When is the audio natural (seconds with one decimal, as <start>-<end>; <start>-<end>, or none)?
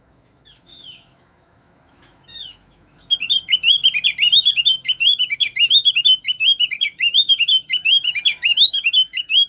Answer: 3.8-4.4